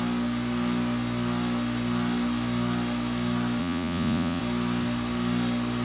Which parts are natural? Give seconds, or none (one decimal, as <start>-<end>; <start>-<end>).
0.0-3.6; 4.4-5.8